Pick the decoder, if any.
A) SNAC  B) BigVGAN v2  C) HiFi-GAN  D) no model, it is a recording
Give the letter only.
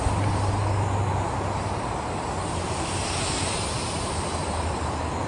D